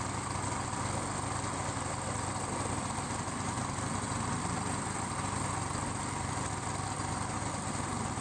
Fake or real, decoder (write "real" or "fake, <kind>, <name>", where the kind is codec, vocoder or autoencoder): real